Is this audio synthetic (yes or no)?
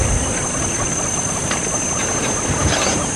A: no